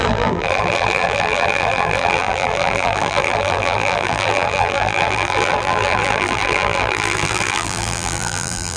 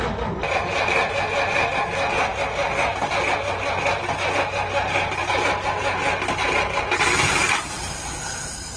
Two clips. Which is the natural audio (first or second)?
second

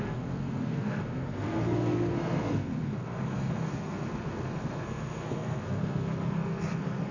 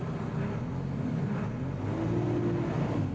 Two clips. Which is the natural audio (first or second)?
second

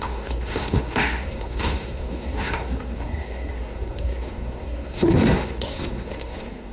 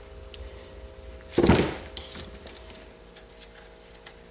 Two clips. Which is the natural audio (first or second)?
second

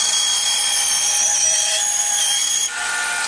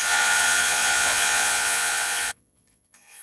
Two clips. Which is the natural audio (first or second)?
first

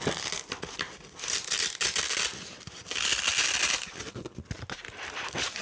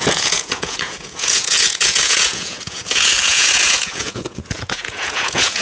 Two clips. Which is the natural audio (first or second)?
first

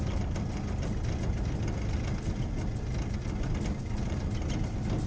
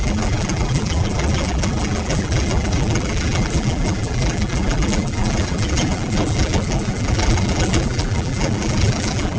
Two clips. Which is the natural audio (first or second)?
first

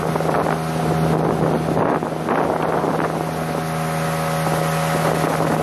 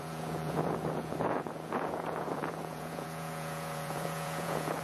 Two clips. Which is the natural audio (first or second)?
first